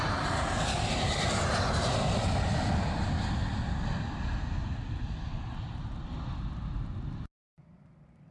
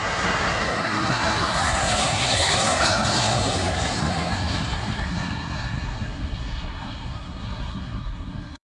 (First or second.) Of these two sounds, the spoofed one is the second